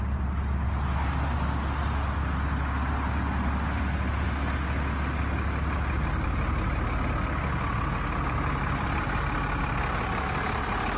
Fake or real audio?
real